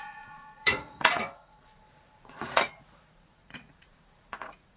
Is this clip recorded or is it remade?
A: remade